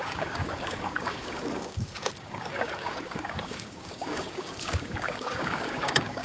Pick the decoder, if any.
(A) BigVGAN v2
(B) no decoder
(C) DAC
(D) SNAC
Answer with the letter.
C